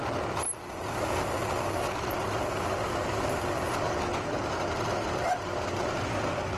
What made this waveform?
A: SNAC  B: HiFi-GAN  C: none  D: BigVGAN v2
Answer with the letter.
C